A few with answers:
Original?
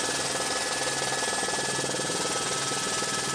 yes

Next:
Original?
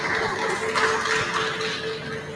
yes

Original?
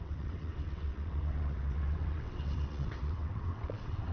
no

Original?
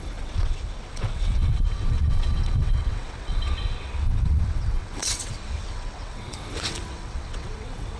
no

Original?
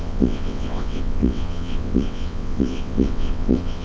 no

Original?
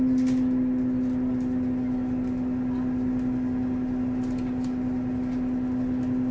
yes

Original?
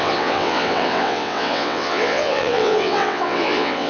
no